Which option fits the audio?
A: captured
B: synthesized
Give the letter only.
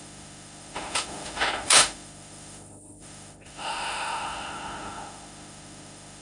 B